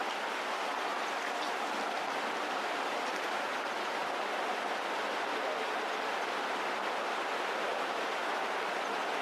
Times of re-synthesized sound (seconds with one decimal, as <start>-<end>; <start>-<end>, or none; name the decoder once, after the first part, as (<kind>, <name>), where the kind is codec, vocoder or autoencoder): none